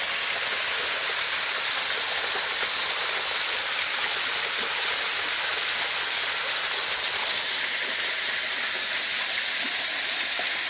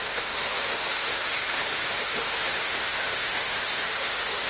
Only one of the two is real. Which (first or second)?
first